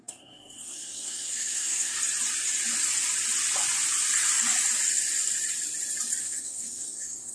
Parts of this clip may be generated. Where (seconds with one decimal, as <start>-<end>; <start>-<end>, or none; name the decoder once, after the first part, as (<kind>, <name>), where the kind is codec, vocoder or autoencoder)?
0.0-1.9 (codec, SNAC); 6.2-7.3